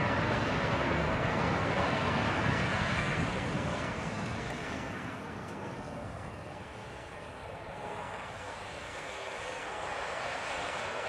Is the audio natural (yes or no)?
no